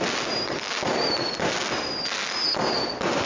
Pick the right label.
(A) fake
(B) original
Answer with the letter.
B